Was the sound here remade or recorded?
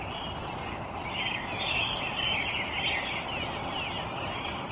recorded